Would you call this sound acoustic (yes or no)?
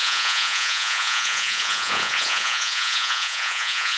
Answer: no